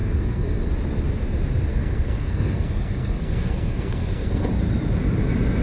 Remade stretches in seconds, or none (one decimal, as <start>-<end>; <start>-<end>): 0.0-0.7; 1.7-4.5